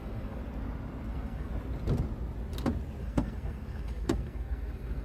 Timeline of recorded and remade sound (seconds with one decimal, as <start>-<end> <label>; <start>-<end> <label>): 0.0-0.4 remade; 0.4-1.1 recorded; 1.1-1.5 remade; 1.5-3.0 recorded; 3.0-5.0 remade